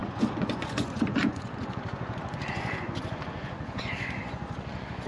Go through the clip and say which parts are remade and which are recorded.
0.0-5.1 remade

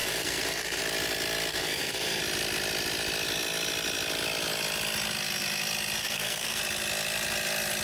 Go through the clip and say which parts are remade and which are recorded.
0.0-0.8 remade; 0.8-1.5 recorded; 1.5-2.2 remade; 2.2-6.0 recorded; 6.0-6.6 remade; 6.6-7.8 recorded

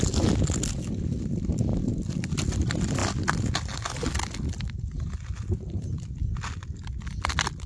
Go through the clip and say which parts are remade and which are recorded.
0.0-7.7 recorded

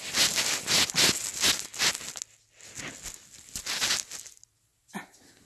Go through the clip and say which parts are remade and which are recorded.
0.0-5.5 recorded